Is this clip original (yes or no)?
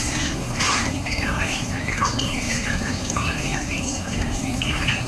no